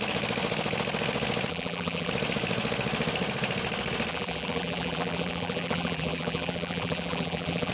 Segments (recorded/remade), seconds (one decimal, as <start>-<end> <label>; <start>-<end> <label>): 0.0-1.5 recorded; 1.5-2.1 remade; 2.1-4.1 recorded; 4.1-7.7 remade